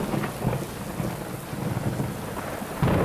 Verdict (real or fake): real